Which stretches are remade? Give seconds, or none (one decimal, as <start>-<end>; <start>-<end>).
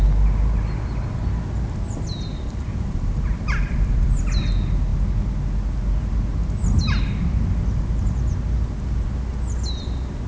2.3-4.2